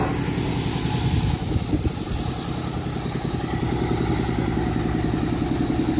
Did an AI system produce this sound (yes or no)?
no